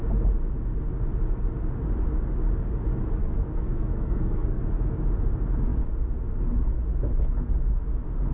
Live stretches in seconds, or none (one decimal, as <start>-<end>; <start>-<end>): 0.0-3.2; 4.6-8.3

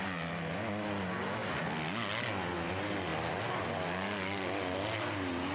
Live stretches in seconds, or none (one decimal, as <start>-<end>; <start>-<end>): 0.0-5.5

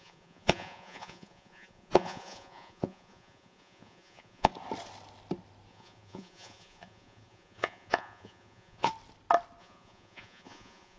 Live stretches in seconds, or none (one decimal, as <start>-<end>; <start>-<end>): 4.5-5.7; 8.9-9.6

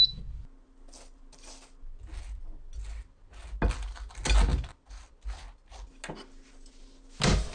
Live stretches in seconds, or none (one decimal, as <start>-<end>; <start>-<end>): 0.0-7.5

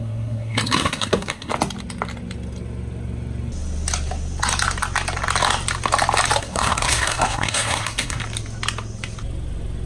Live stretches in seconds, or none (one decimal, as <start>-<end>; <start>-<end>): 1.5-6.4; 8.2-9.9

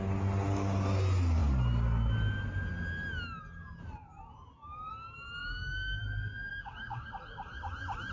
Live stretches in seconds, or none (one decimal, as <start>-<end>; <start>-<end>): 0.0-5.4; 6.0-6.5; 7.1-8.1

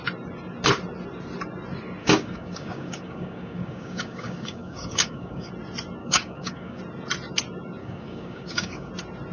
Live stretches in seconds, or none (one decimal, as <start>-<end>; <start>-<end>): 0.0-2.0; 5.5-6.0; 6.8-7.8; 8.9-9.3